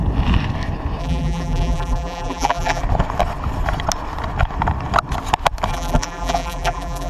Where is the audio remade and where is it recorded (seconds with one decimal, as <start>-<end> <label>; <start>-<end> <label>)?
0.0-1.0 recorded; 1.0-2.8 remade; 2.8-5.7 recorded; 5.7-7.1 remade